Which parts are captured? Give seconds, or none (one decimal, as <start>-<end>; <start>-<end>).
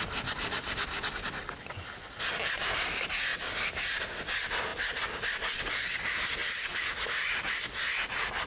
0.0-8.5